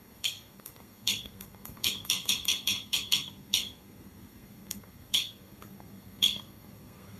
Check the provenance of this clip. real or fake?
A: fake